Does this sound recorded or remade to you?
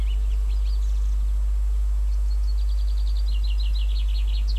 recorded